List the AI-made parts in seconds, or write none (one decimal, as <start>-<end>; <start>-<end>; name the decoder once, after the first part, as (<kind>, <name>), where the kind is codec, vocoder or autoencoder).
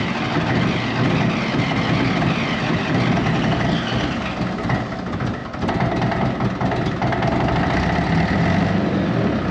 none